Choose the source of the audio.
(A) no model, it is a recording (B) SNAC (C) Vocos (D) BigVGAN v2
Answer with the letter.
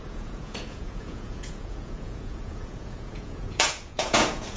C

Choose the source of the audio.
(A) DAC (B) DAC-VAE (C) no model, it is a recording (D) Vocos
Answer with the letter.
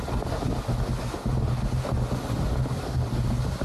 C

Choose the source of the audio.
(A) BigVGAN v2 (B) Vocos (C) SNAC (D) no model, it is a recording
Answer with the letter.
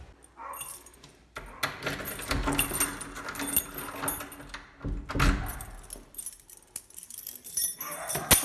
D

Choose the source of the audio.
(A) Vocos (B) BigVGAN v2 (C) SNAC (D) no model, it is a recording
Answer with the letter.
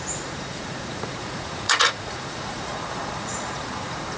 A